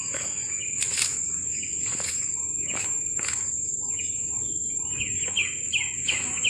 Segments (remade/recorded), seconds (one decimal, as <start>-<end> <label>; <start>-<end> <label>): 0.0-6.5 remade

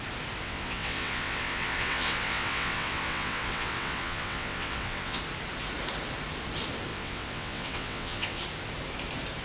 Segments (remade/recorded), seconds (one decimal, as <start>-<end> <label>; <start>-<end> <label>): 0.0-0.4 recorded; 0.4-5.2 remade; 5.2-6.9 recorded; 6.9-8.4 remade; 8.4-9.4 recorded

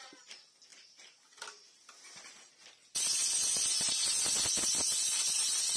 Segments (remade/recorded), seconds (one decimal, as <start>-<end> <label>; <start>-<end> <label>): 0.0-5.8 recorded

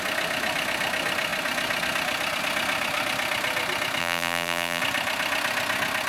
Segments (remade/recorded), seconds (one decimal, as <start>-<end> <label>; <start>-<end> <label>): 0.0-4.0 recorded; 4.0-4.8 remade; 4.8-6.1 recorded

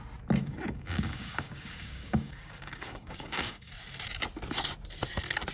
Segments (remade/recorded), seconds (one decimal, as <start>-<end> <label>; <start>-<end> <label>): 0.0-0.4 recorded; 0.4-3.7 remade; 3.7-5.5 recorded

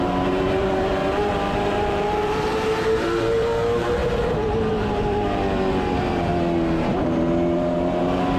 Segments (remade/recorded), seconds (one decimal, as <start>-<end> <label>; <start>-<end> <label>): 0.0-4.0 remade; 4.0-4.7 recorded; 4.7-6.3 remade; 6.3-7.0 recorded; 7.0-8.4 remade

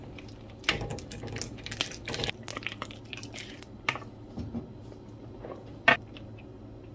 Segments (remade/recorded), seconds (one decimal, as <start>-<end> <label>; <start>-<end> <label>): 0.0-6.9 recorded